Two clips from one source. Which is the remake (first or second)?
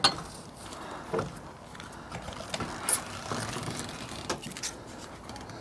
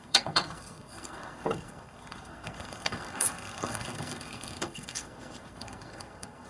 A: second